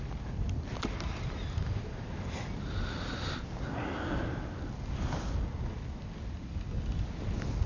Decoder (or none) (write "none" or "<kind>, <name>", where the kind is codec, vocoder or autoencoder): none